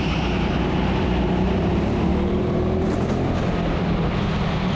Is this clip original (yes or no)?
yes